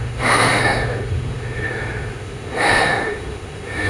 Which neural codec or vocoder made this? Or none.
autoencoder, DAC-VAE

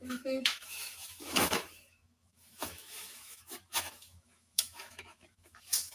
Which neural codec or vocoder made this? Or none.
autoencoder, DAC-VAE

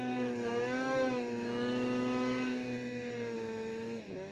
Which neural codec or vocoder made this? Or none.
autoencoder, DAC-VAE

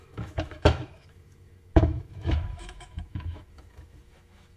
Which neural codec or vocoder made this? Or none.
autoencoder, DAC-VAE